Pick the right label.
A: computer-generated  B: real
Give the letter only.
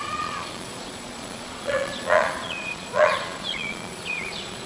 A